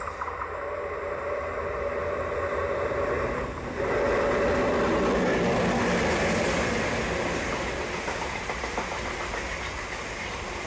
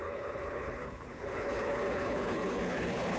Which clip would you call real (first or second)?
first